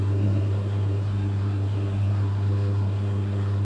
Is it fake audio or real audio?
fake